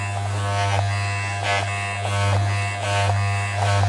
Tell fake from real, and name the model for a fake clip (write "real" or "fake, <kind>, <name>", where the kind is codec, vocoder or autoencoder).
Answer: real